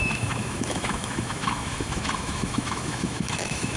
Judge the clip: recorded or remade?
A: remade